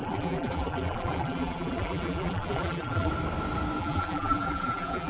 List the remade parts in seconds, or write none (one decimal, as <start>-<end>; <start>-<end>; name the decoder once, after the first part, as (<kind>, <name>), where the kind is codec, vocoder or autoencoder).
0.0-3.1 (vocoder, BigVGAN v2); 3.8-5.1